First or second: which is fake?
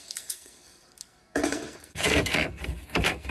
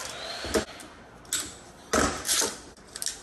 first